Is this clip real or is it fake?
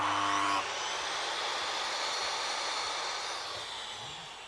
real